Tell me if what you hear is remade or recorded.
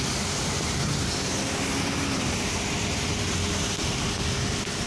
recorded